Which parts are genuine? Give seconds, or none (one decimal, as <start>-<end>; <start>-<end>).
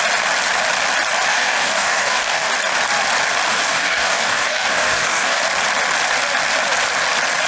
0.0-1.3; 2.5-3.5; 5.4-7.5